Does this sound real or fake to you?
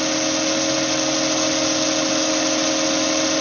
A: real